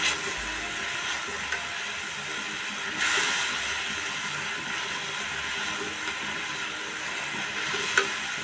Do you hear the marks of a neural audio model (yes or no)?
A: no